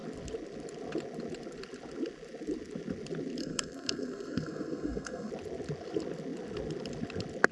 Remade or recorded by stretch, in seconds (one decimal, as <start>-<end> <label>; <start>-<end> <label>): 0.0-3.4 recorded; 3.4-5.3 remade; 5.3-7.5 recorded